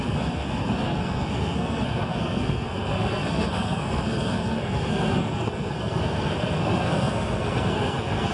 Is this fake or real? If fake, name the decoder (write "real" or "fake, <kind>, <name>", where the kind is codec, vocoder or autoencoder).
fake, codec, SNAC